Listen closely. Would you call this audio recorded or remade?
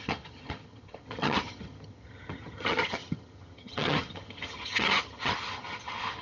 remade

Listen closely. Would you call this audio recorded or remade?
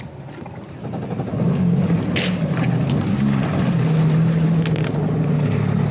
recorded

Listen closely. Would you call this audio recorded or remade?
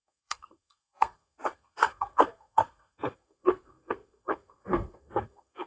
remade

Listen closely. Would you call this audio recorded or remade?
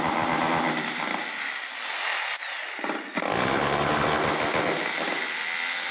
recorded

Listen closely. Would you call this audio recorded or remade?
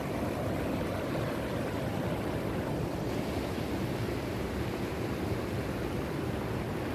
recorded